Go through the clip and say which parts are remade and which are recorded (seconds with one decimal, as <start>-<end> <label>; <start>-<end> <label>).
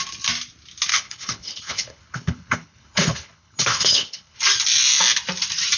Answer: 0.0-0.9 recorded; 0.9-4.4 remade; 4.4-5.8 recorded